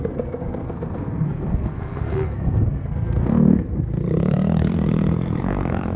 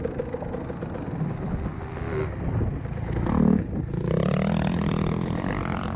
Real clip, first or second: second